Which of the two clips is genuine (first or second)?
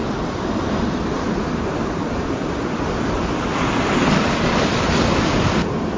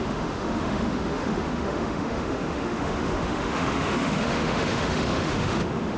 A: first